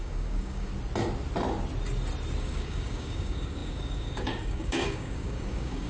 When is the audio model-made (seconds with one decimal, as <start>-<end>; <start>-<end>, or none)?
0.0-0.7; 2.4-5.9